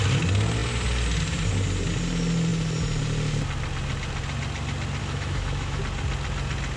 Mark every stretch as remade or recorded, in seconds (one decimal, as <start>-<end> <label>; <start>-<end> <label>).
0.0-5.0 recorded; 5.0-5.8 remade; 5.8-6.8 recorded